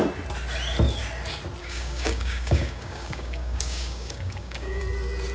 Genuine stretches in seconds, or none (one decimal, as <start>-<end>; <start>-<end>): 0.0-1.6; 4.8-5.3